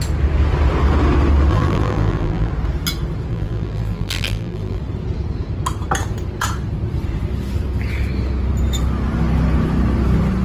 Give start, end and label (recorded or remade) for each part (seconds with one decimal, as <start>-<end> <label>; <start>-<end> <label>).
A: 0.0-1.5 recorded; 1.5-2.5 remade; 2.5-3.3 recorded; 3.3-4.8 remade; 4.8-10.4 recorded